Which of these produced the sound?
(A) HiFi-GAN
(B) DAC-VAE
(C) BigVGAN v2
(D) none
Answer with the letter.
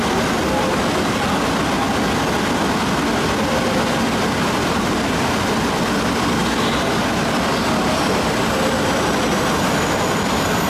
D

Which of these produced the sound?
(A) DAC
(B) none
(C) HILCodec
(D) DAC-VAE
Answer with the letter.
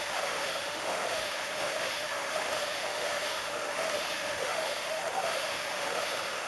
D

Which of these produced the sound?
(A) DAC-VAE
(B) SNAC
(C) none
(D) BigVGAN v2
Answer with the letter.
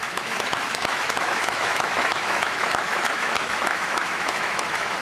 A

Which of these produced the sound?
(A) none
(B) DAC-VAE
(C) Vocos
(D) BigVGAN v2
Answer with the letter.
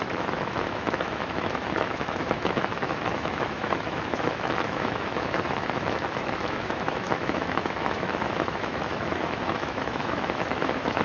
B